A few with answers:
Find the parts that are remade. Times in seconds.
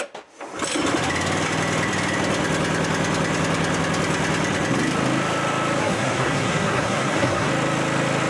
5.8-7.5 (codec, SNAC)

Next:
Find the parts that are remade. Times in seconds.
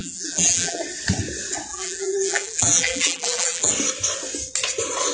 0.0-0.8 (vocoder, BigVGAN v2); 1.7-3.7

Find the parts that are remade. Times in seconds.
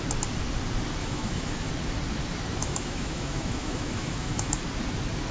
1.0-1.7 (autoencoder, DAC-VAE); 2.6-4.6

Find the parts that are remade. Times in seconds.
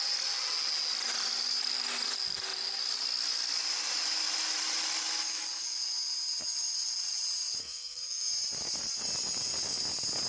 7.6-8.3 (autoencoder, DAC-VAE)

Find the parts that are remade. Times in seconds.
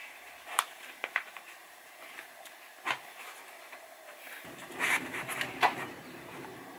0.0-6.8 (vocoder, BigVGAN v2)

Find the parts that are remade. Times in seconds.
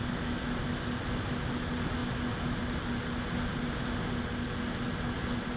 none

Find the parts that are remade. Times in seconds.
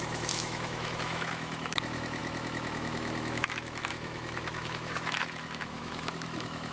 0.0-6.7 (autoencoder, DAC-VAE)